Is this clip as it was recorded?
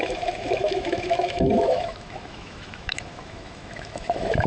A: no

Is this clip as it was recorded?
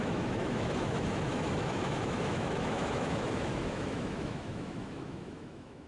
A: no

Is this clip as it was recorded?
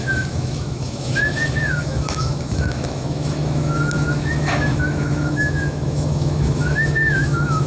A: no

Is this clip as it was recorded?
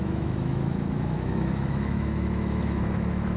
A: no